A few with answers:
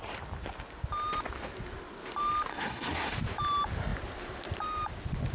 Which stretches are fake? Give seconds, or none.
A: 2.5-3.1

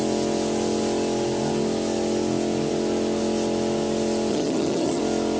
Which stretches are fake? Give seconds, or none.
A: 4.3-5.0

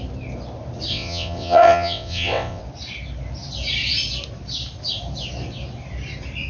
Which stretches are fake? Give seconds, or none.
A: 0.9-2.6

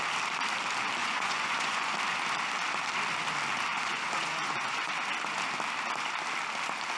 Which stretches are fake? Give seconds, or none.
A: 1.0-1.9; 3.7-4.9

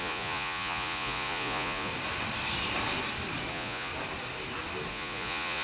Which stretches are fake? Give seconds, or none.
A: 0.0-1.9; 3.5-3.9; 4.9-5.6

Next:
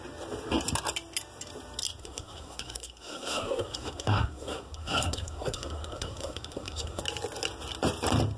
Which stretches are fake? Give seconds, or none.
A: 2.0-7.0